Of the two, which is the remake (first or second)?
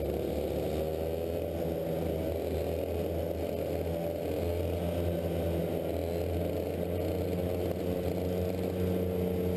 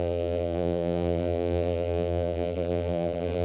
second